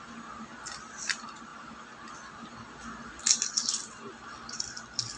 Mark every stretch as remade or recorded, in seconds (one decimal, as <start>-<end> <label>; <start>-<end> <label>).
0.0-5.2 recorded